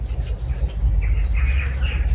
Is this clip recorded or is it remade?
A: recorded